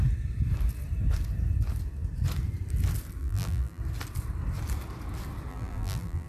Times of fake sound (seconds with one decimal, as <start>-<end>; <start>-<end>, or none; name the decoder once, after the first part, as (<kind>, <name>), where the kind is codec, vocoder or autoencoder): 3.2-3.8 (vocoder, BigVGAN v2); 5.5-6.3

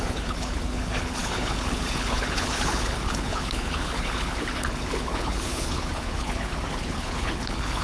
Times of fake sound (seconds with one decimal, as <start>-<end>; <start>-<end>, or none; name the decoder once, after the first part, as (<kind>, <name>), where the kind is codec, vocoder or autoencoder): 0.0-7.8 (codec, HILCodec)